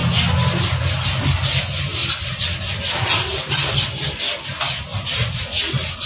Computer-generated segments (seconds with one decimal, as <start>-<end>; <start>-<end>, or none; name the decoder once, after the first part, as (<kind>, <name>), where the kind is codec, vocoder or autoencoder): none